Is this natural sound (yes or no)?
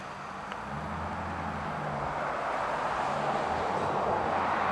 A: yes